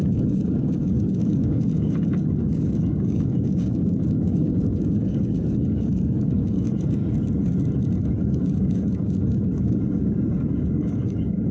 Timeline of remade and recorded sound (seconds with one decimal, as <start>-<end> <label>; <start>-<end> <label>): 0.0-7.0 remade; 7.0-8.2 recorded; 8.2-11.5 remade